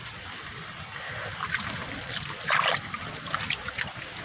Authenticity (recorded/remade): recorded